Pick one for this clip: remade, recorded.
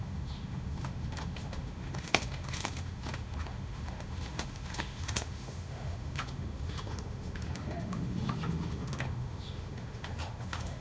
remade